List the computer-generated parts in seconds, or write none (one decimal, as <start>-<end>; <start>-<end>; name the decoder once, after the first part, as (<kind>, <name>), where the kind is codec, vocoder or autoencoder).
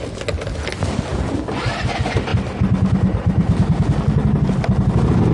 none